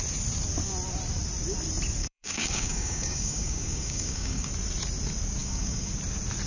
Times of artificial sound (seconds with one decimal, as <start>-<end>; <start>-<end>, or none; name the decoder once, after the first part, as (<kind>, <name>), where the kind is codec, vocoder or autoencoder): 2.0-4.5 (codec, DAC); 5.4-5.9